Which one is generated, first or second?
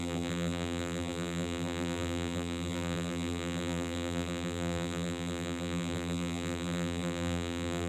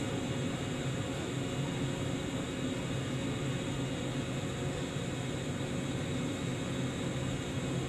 first